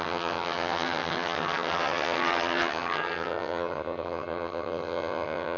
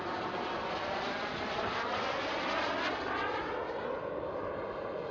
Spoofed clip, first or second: first